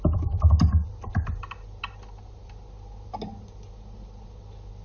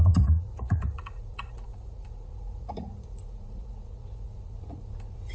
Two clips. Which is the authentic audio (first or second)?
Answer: first